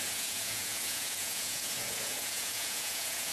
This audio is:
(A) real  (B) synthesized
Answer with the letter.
B